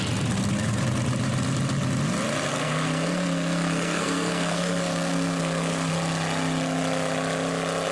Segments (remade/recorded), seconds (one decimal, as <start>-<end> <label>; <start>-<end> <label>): 0.0-2.5 recorded; 2.5-5.9 remade; 5.9-7.9 recorded